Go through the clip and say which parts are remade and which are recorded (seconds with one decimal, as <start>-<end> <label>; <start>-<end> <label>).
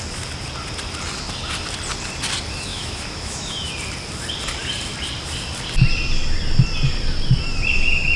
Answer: 0.0-2.7 recorded; 2.7-3.7 remade; 3.7-8.2 recorded